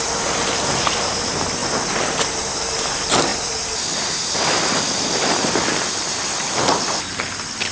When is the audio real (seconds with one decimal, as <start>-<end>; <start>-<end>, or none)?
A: 0.0-7.7